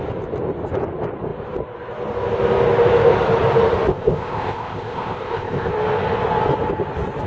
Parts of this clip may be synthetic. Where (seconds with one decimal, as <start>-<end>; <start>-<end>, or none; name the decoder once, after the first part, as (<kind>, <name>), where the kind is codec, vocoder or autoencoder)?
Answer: 3.9-5.7 (codec, ZipCodec)